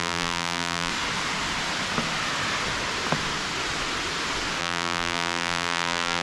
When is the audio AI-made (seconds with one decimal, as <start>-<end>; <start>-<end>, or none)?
0.0-0.9; 4.6-6.2